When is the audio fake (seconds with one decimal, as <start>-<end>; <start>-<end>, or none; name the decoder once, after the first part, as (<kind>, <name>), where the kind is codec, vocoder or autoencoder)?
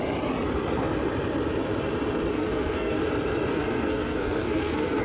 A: 2.3-3.0 (codec, SNAC); 3.5-5.0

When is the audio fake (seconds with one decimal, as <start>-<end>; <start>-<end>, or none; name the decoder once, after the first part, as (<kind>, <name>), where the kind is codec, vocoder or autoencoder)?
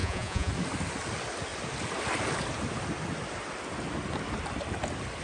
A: 0.0-0.5 (vocoder, Vocos)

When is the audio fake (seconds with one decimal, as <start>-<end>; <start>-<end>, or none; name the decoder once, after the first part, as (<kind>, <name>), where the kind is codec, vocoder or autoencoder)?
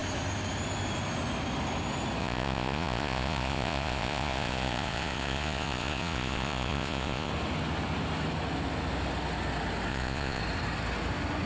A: 2.2-7.3 (vocoder, Vocos); 9.9-10.4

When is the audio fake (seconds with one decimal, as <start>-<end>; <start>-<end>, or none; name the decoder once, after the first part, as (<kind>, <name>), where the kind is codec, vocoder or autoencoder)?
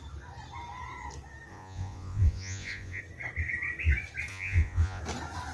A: 1.5-3.0 (vocoder, Vocos); 4.3-5.0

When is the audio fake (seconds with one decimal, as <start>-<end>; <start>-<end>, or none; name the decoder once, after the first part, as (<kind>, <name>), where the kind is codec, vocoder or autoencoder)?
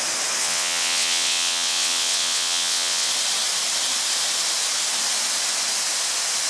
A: 0.4-3.1 (vocoder, WaveNeXt)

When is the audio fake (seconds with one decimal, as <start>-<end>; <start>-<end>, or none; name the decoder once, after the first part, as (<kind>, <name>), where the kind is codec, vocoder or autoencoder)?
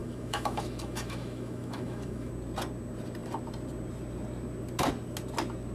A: 0.0-2.3 (autoencoder, DAC-VAE)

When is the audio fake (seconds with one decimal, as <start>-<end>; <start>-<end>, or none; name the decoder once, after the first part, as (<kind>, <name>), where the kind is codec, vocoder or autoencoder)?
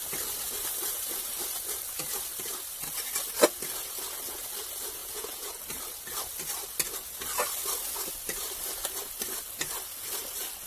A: 5.0-5.6 (vocoder, Vocos)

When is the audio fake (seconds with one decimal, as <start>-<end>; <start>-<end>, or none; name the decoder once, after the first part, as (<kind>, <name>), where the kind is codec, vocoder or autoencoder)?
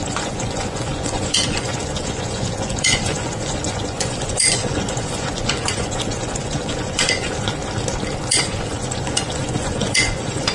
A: 0.0-7.6 (vocoder, Vocos); 8.2-10.5